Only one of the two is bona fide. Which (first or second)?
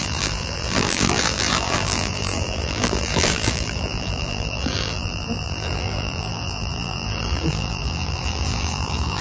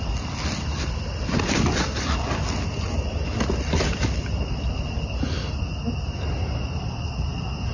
second